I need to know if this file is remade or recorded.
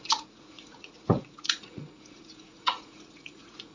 remade